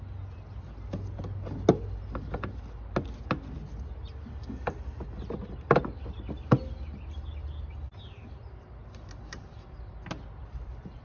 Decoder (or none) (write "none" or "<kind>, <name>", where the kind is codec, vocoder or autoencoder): none